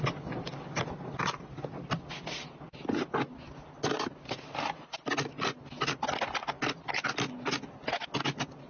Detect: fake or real real